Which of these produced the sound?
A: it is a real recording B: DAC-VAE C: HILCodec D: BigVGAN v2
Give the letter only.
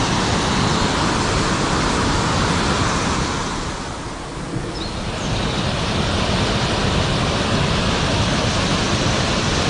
D